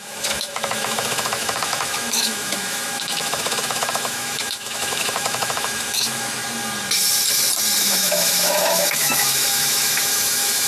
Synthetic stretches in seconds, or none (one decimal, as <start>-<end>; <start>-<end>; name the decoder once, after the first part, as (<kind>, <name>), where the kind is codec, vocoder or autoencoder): 0.0-6.4 (autoencoder, DAC-VAE); 7.8-10.7